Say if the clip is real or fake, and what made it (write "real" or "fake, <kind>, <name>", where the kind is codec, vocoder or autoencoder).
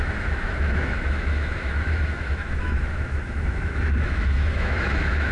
fake, autoencoder, DAC-VAE